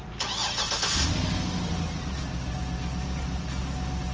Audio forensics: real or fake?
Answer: real